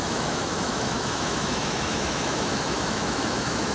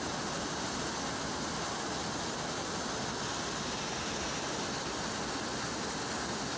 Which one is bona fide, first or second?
second